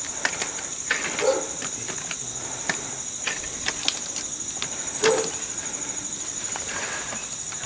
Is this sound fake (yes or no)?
yes